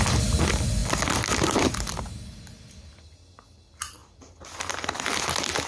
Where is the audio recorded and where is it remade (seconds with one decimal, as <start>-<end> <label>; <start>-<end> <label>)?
0.0-0.8 recorded; 0.8-1.9 remade; 1.9-5.7 recorded